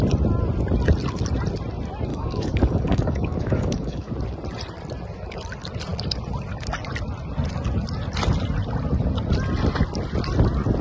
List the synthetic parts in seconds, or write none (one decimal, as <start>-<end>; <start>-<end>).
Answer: 2.1-4.1